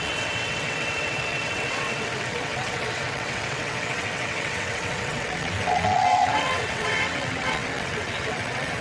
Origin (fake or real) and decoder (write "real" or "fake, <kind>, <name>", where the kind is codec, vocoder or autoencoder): fake, vocoder, WaveNeXt